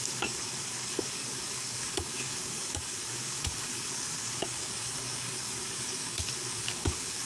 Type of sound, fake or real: fake